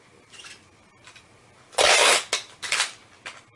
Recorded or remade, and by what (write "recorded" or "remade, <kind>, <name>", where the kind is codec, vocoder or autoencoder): recorded